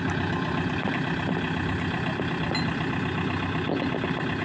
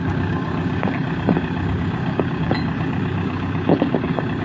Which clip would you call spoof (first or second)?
second